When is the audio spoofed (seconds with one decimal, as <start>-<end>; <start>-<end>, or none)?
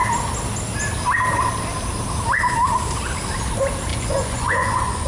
3.9-5.1